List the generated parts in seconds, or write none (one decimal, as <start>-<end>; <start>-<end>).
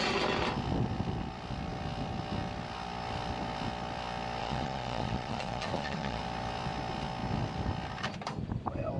4.4-6.2